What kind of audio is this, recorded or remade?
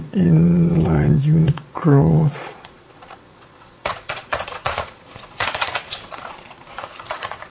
remade